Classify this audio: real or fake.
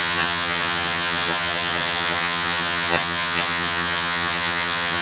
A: fake